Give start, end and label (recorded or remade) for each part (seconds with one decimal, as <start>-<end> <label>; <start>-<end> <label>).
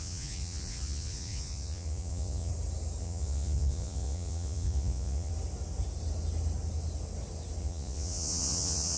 0.0-2.5 remade; 2.5-3.0 recorded; 3.0-5.3 remade; 5.3-7.6 recorded; 7.6-9.0 remade